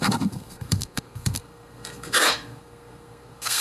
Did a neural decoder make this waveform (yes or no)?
yes